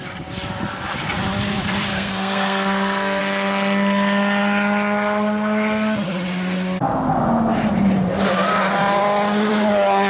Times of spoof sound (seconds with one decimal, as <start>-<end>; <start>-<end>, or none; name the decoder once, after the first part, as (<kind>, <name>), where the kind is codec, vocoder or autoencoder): 1.9-3.2 (codec, SNAC)